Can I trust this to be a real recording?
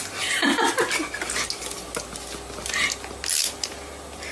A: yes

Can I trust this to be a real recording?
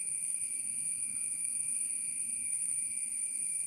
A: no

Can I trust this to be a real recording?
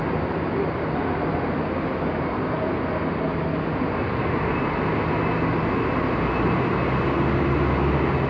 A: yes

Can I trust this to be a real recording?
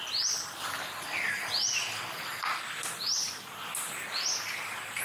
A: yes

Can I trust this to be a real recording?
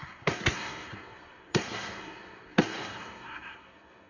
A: no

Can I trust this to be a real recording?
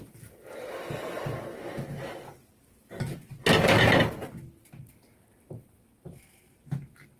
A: yes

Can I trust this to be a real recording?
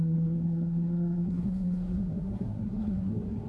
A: no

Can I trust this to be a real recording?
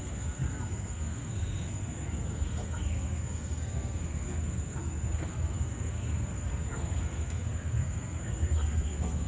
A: no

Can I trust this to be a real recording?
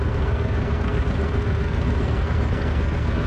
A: no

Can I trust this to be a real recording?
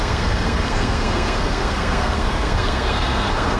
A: no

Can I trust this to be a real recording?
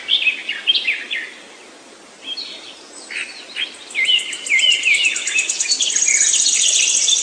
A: yes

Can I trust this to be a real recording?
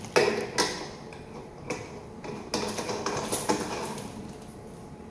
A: yes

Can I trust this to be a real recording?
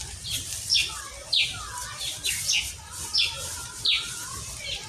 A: yes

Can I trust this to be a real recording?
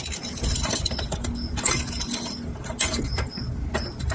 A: yes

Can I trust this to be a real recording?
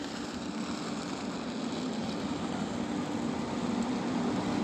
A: yes